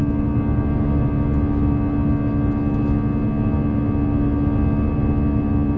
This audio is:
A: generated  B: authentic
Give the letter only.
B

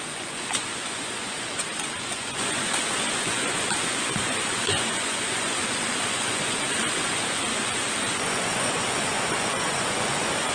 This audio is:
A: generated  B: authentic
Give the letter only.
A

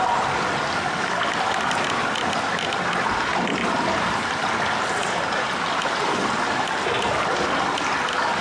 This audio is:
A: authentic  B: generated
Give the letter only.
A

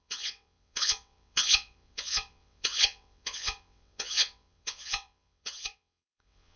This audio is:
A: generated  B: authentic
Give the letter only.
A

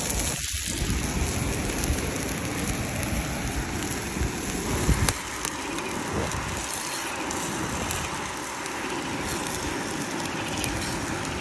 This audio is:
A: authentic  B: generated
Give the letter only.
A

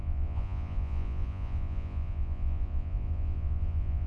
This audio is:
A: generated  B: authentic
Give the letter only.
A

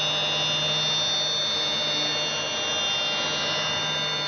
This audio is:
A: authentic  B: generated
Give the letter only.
A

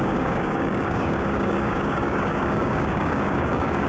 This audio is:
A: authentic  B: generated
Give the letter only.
B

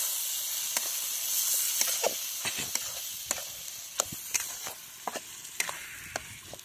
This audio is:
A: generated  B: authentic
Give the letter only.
B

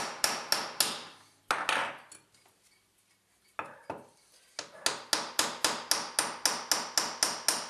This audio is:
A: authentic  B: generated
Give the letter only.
A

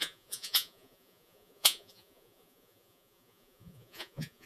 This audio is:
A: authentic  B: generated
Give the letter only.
B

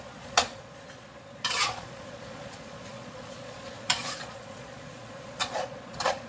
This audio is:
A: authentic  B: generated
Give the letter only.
B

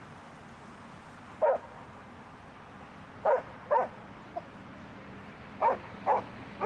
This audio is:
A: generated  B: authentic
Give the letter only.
B